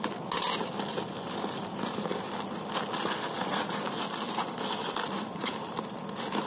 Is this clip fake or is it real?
real